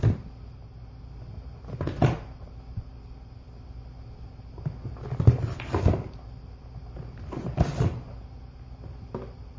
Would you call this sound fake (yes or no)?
no